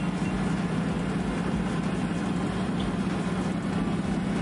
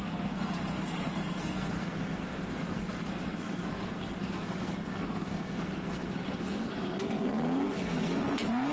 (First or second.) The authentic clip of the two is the first